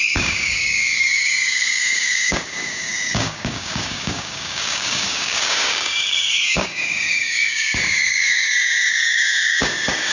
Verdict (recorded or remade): remade